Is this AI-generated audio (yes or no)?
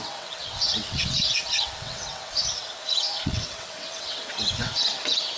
yes